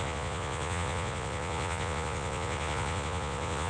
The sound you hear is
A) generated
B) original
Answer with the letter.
A